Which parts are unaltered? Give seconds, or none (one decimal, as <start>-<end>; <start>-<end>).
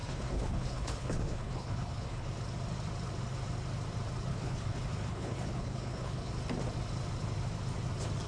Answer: 2.3-4.3; 6.3-8.3